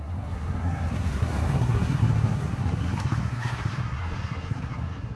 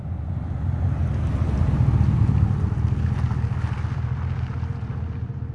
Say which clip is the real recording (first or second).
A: second